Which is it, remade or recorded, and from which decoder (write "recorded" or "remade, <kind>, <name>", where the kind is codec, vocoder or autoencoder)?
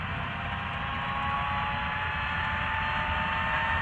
recorded